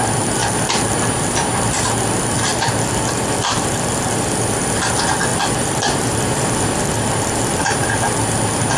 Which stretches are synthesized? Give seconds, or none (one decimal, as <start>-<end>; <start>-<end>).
2.5-4.3; 5.3-7.6